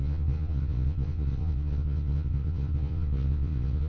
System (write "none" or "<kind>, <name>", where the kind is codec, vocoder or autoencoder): vocoder, Vocos